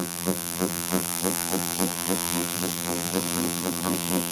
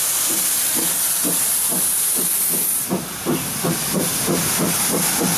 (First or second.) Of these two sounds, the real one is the second